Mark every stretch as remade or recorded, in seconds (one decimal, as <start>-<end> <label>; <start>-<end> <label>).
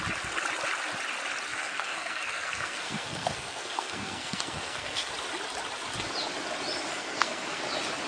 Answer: 0.0-1.5 recorded; 1.5-5.1 remade; 5.1-6.9 recorded; 6.9-7.6 remade; 7.6-8.1 recorded